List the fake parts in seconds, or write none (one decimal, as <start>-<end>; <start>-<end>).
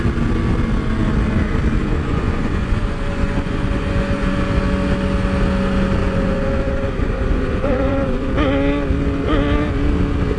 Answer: 1.8-4.6; 6.0-8.3